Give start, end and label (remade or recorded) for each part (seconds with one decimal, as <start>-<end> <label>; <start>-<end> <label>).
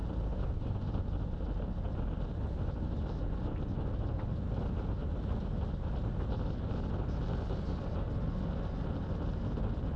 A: 0.0-1.0 remade; 1.0-5.0 recorded; 5.0-5.5 remade; 5.5-10.0 recorded